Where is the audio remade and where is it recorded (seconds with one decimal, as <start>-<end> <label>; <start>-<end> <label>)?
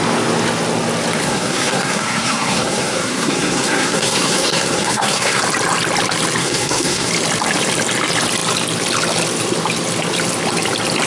0.0-1.2 recorded; 1.2-5.4 remade; 5.4-6.4 recorded; 6.4-7.1 remade; 7.1-11.1 recorded